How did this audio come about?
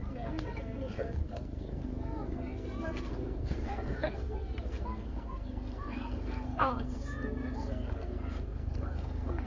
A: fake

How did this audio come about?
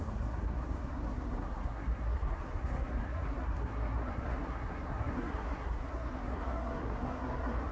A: fake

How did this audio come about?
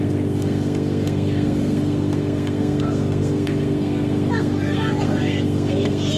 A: fake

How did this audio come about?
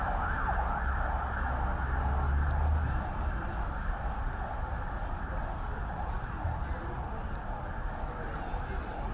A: real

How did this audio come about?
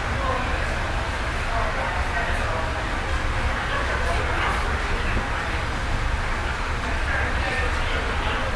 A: real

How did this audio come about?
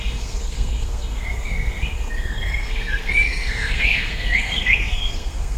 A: fake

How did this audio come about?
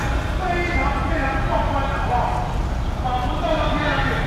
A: real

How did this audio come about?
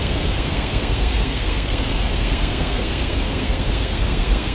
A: fake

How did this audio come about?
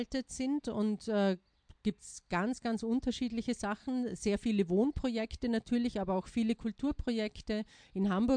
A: real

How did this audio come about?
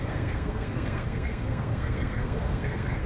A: fake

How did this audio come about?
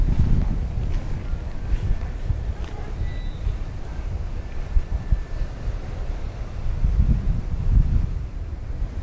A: real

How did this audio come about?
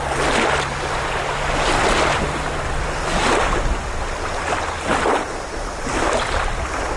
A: real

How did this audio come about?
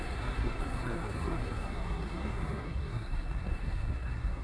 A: fake